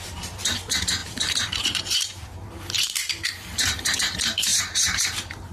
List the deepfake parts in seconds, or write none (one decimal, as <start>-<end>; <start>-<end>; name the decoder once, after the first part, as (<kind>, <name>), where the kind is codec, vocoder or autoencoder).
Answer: 0.0-5.5 (vocoder, BigVGAN v2)